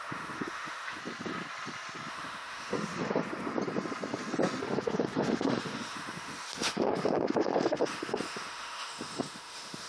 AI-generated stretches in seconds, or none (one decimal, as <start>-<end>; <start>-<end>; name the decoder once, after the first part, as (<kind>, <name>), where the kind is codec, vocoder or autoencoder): 0.0-1.0 (autoencoder, DAC-VAE); 2.1-3.5; 4.6-9.9